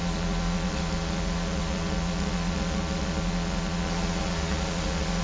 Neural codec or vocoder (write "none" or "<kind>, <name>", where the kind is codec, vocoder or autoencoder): vocoder, Vocos